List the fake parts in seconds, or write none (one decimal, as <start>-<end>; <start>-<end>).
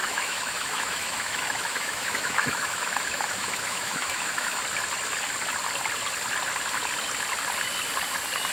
0.0-4.6